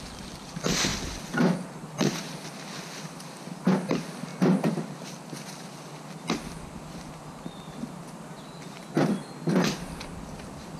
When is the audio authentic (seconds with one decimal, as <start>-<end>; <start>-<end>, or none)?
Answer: 0.0-10.8